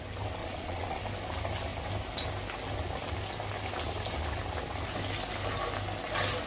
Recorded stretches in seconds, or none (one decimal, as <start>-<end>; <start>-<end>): 0.0-0.4; 1.0-6.5